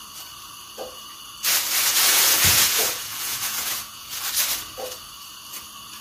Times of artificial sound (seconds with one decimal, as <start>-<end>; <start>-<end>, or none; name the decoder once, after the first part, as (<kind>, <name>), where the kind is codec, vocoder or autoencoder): 1.9-4.2 (vocoder, Vocos)